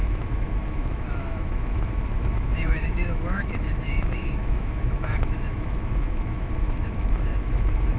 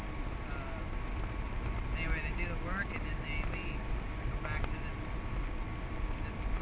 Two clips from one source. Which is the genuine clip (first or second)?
second